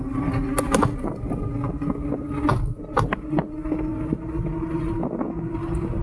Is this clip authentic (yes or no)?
yes